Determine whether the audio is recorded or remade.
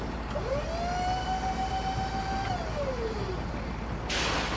recorded